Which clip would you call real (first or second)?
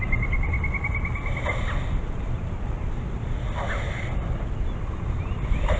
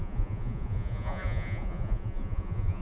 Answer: first